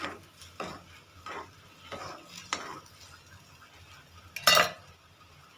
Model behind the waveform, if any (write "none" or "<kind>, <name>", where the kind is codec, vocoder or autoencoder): none